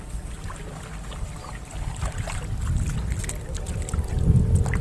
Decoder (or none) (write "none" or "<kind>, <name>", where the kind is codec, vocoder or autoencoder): none